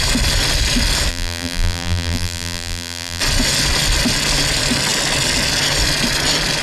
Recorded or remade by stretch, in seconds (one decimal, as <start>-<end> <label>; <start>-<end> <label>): 0.0-1.1 recorded; 1.1-3.2 remade; 3.2-6.6 recorded